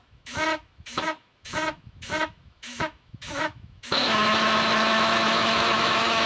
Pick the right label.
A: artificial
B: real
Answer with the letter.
A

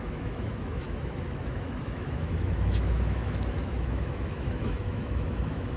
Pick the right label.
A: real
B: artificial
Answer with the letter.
B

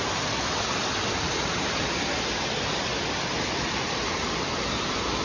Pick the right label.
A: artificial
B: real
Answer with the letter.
B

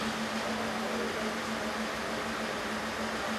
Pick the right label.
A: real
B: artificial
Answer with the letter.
A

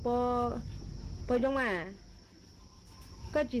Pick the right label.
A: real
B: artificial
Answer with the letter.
A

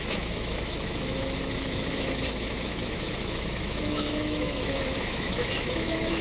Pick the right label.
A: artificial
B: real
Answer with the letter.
A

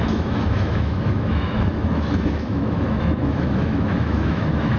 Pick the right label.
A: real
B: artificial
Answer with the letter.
B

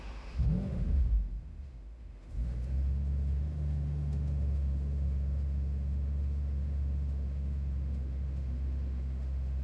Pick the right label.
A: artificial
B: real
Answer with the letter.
A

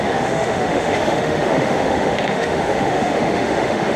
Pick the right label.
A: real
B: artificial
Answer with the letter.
B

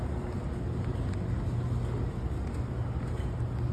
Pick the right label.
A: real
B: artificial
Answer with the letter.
A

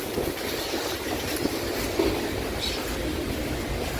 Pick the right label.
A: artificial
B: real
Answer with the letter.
B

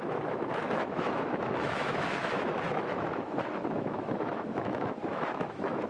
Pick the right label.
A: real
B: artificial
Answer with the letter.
B